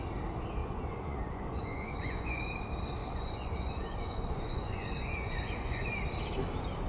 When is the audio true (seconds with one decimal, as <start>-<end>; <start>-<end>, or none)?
0.0-0.6; 2.5-3.0; 6.0-6.9

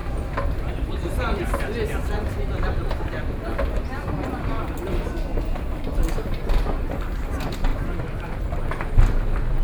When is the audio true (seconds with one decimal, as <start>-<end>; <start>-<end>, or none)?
1.4-2.0; 3.0-5.3; 6.3-7.7; 8.3-9.6

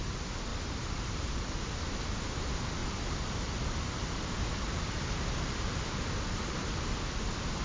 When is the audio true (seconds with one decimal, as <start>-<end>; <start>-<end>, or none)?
0.0-0.5; 1.3-2.8; 6.9-7.6